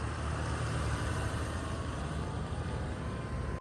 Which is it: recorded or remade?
remade